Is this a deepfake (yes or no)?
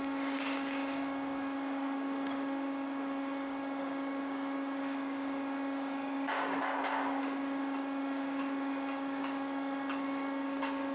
yes